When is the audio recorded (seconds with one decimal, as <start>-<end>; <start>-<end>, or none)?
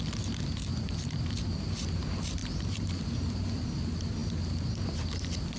0.0-0.7; 1.4-2.4; 3.7-4.2